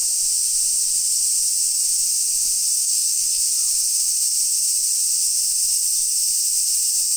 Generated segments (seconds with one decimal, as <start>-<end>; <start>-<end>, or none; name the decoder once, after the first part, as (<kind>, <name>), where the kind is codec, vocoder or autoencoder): 2.7-3.4 (codec, SNAC)